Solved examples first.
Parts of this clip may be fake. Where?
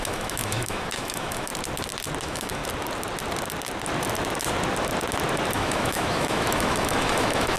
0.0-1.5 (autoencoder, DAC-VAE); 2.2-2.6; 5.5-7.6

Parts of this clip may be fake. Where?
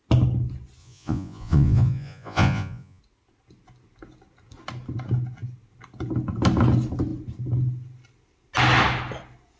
0.8-3.0 (vocoder, Vocos)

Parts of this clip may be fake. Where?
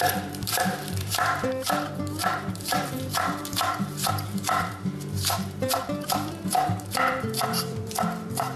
0.0-8.6 (vocoder, BigVGAN v2)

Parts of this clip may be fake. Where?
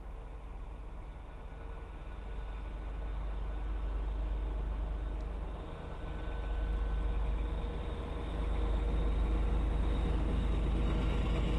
none